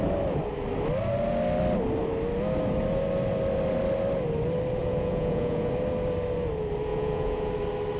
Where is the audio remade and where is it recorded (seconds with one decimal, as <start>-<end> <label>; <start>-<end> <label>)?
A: 0.0-4.8 recorded; 4.8-5.7 remade; 5.7-6.9 recorded; 6.9-7.5 remade; 7.5-8.0 recorded